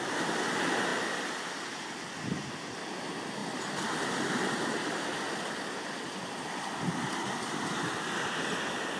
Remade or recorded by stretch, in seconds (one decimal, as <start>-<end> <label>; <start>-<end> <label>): 0.0-9.0 recorded